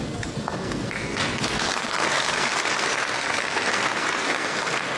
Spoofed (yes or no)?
yes